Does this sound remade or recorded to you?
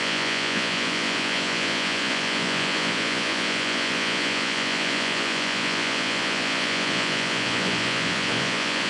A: remade